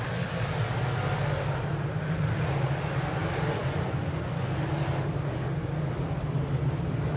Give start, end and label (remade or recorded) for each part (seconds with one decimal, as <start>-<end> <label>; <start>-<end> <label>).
0.0-3.6 remade; 3.6-6.0 recorded; 6.0-7.2 remade